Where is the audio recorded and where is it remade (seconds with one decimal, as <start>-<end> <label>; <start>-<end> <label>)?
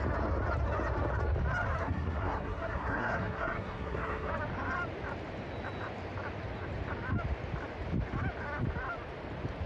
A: 0.0-1.8 recorded; 1.8-4.3 remade; 4.3-9.7 recorded